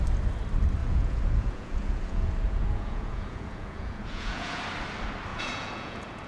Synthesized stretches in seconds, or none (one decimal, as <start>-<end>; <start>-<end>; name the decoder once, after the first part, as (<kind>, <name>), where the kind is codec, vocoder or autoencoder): 0.8-4.6 (vocoder, Vocos); 5.3-6.3